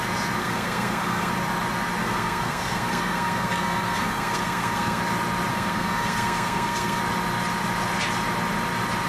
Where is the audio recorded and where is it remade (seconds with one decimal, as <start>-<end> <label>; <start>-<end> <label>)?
0.0-0.4 recorded; 0.4-1.3 remade; 1.3-2.0 recorded; 2.0-5.0 remade; 5.0-5.5 recorded; 5.5-7.0 remade; 7.0-9.1 recorded